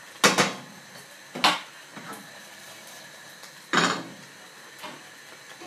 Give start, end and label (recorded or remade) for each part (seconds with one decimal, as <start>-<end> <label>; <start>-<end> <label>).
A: 0.0-5.7 recorded